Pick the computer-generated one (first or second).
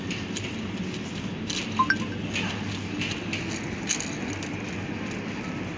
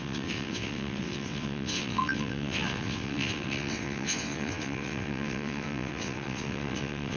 second